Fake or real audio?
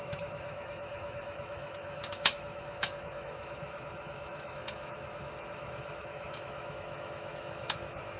fake